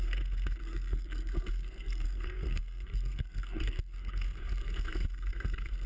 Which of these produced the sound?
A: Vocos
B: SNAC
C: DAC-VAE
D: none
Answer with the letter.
B